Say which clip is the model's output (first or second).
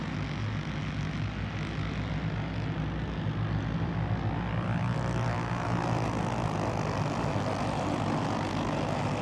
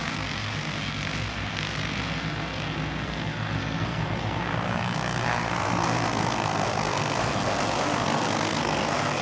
second